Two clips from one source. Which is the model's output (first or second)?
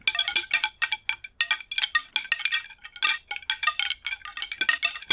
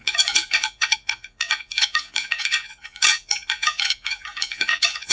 second